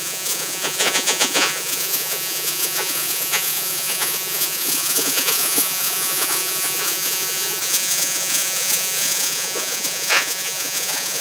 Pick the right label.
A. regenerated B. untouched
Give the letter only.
A